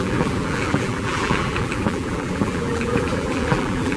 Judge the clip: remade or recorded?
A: remade